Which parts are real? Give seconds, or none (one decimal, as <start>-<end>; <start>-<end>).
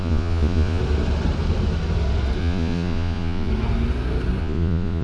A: 0.8-2.4; 3.5-4.4